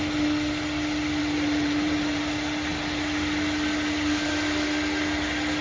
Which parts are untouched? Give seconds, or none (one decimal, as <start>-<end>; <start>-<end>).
0.0-1.2; 2.2-5.6

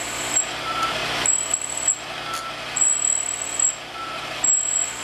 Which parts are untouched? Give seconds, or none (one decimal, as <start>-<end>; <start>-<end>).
1.0-4.0

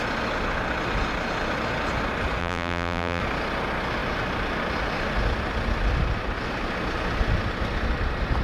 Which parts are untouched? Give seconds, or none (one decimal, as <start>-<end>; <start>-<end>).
0.0-2.4; 3.2-8.4

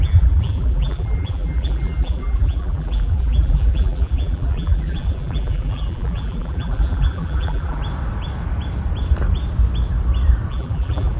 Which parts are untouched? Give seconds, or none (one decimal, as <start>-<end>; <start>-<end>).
7.8-10.5

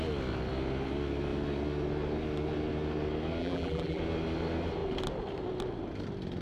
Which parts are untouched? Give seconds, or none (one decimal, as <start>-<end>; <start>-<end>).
0.0-3.4; 4.0-6.4

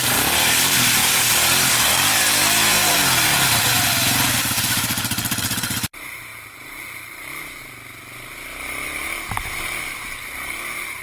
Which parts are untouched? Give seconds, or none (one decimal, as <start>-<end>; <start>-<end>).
1.0-2.3